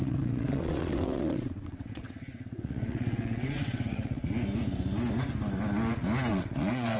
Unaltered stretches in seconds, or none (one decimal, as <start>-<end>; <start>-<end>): 4.2-6.3